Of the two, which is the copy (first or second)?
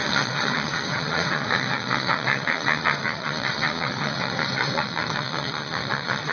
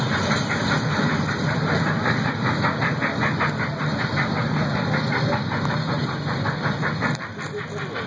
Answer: first